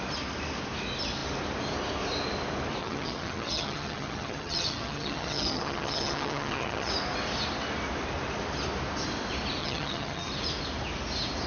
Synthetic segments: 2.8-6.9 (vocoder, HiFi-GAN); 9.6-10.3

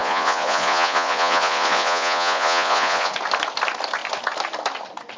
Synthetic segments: 0.0-3.1 (vocoder, Vocos)

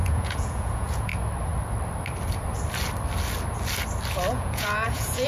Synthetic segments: 0.0-1.1 (vocoder, Vocos); 4.3-5.3

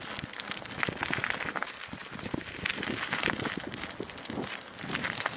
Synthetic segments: none

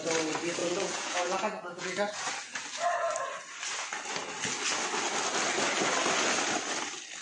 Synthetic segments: 0.6-2.1 (vocoder, Vocos)

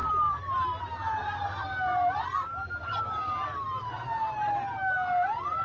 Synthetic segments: none

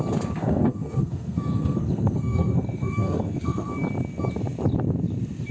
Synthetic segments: 0.4-3.7 (codec, SNAC)

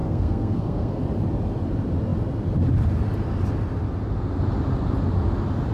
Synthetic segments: 0.0-1.0 (codec, SNAC)